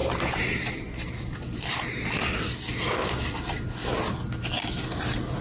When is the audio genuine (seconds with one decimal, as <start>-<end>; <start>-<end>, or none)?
3.2-5.4

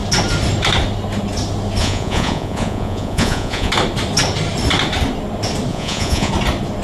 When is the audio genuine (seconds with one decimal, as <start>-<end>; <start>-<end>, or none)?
0.0-1.8; 3.7-5.7; 6.3-6.8

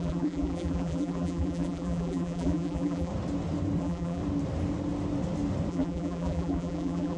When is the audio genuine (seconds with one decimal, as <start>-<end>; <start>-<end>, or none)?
3.1-3.8; 4.2-5.7

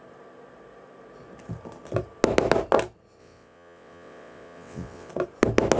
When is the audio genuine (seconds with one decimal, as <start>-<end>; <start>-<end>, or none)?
0.0-3.2; 5.1-5.8

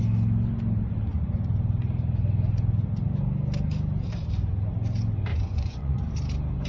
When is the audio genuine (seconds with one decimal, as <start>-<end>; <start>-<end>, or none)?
0.0-5.3; 6.0-6.7

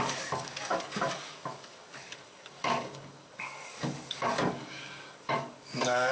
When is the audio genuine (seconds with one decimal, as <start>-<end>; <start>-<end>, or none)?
none

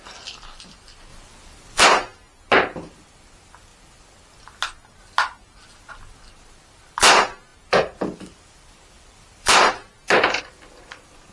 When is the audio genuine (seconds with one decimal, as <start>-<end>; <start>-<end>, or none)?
0.0-1.1; 1.8-7.5; 10.4-11.3

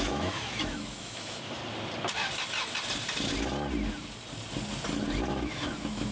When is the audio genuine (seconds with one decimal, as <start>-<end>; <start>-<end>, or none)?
1.6-5.3